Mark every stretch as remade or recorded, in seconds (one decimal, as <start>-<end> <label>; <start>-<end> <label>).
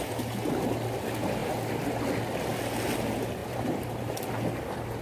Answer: 0.0-3.4 recorded; 3.4-4.1 remade; 4.1-5.0 recorded